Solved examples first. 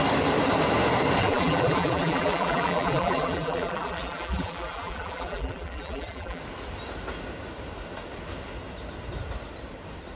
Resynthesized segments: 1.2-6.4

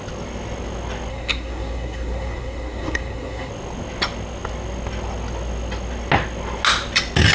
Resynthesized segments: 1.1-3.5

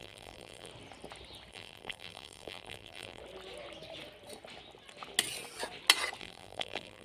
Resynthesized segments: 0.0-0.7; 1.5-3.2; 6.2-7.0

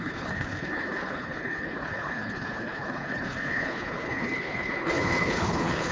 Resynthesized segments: 0.0-5.9